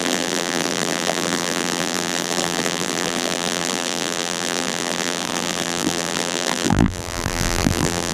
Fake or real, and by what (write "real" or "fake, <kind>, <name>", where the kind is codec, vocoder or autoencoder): fake, vocoder, BigVGAN v2